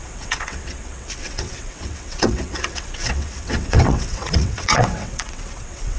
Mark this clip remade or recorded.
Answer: remade